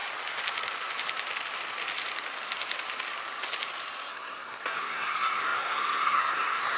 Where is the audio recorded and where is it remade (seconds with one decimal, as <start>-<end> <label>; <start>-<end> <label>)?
0.0-4.1 recorded; 4.1-6.8 remade